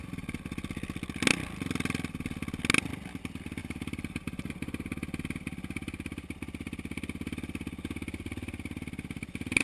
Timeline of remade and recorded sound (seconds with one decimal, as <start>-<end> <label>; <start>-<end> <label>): 0.0-3.6 recorded; 3.6-4.5 remade; 4.5-9.6 recorded